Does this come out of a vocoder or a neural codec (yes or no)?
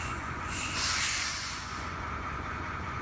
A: yes